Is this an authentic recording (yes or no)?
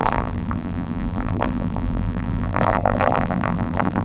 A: no